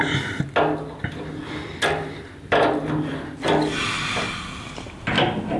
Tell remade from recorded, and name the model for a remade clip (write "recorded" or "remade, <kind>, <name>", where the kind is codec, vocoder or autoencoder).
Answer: recorded